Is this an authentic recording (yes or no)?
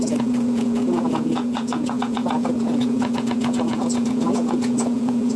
no